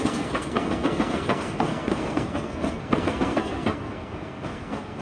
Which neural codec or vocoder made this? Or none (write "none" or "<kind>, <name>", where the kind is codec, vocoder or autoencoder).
codec, SNAC